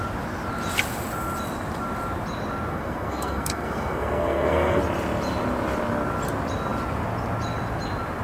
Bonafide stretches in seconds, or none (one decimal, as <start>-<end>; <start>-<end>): 0.0-2.7; 4.8-8.2